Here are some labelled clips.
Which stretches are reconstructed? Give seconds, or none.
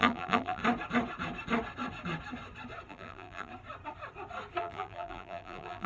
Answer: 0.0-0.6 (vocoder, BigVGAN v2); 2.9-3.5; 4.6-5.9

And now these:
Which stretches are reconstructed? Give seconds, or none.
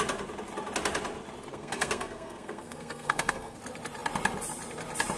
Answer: 1.5-3.6 (codec, SNAC)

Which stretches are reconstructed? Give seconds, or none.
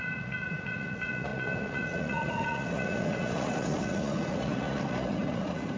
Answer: 0.0-5.8 (vocoder, Vocos)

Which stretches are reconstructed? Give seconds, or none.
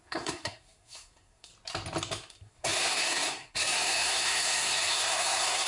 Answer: 0.0-1.5 (codec, SNAC); 2.3-5.7